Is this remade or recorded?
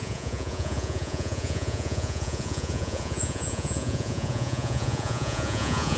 remade